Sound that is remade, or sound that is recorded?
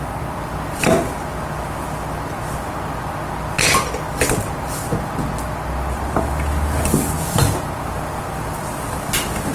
recorded